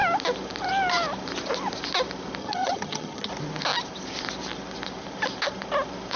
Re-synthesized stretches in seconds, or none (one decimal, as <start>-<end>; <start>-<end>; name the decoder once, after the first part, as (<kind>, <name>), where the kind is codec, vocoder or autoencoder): 2.4-3.3 (vocoder, HiFi-GAN)